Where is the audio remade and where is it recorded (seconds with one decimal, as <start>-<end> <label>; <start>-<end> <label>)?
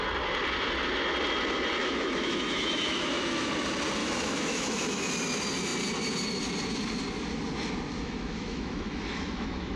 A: 0.0-1.8 recorded; 1.8-3.5 remade; 3.5-4.0 recorded; 4.0-5.1 remade; 5.1-7.9 recorded; 7.9-9.8 remade